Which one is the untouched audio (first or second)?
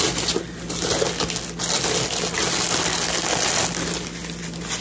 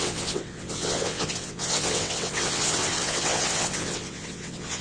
first